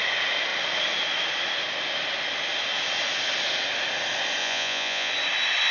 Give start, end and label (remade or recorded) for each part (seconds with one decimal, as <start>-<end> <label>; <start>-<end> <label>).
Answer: 0.0-4.4 recorded; 4.4-5.1 remade; 5.1-5.7 recorded